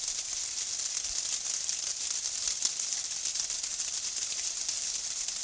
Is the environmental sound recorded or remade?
recorded